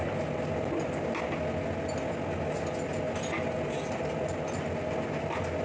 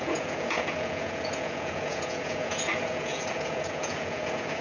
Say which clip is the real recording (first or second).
first